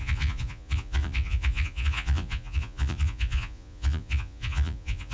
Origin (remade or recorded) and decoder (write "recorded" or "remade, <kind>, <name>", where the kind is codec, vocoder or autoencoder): remade, vocoder, Vocos